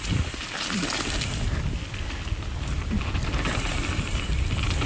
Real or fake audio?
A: real